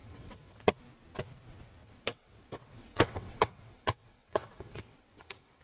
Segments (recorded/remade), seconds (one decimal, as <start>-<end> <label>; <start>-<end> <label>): 0.0-0.7 remade; 0.7-1.8 recorded; 1.8-5.6 remade